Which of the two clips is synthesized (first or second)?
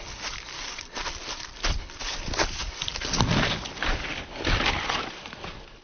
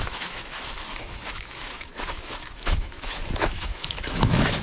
second